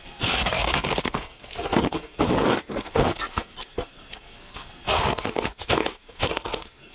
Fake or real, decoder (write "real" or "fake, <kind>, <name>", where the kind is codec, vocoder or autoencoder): fake, codec, SNAC